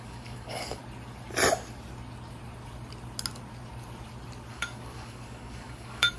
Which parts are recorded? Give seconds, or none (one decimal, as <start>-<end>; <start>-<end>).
0.8-4.5